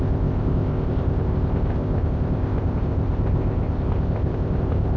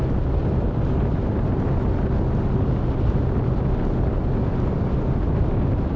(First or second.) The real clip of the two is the second